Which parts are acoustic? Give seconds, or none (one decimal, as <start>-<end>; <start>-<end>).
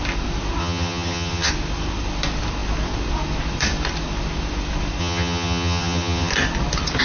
0.0-0.6; 1.5-5.0; 6.3-7.0